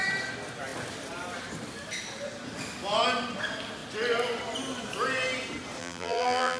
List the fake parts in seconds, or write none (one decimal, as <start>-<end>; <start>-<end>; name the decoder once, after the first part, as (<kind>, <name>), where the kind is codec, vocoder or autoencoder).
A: 5.8-6.6 (vocoder, BigVGAN v2)